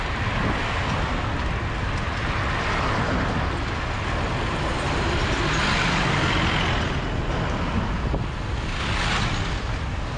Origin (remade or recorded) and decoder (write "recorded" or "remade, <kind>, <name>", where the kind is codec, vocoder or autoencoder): recorded